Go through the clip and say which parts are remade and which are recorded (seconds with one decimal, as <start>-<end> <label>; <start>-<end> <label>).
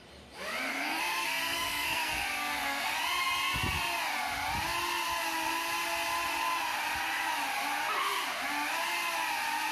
0.0-0.7 recorded; 0.7-3.0 remade; 3.0-9.7 recorded